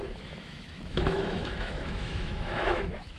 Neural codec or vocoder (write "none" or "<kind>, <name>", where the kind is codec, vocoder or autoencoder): autoencoder, DAC-VAE